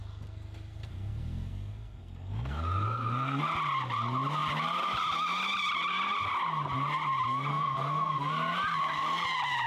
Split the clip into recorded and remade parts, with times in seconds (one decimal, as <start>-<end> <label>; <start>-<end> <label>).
0.0-3.4 remade; 3.4-7.5 recorded; 7.5-8.3 remade; 8.3-9.7 recorded